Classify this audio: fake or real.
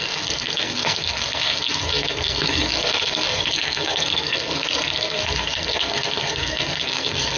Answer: fake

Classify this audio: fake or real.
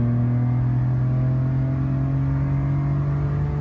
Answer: real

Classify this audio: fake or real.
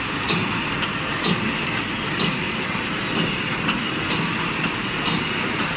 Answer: real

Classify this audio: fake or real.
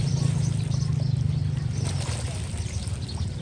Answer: real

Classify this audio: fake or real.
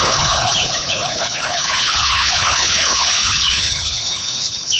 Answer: fake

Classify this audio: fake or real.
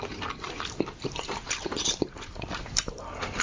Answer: fake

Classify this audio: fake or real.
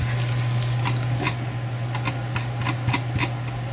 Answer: real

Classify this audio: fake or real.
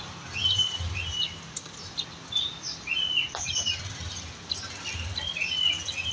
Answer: real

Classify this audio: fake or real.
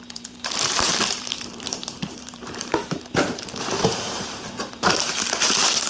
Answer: fake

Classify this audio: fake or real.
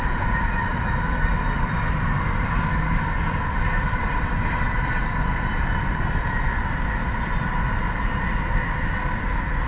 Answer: real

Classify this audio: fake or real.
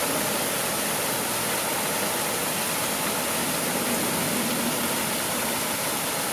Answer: real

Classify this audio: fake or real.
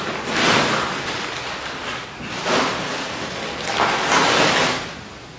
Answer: real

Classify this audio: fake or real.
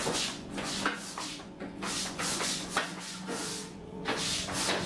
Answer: fake